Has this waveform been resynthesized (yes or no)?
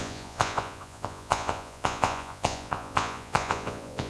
yes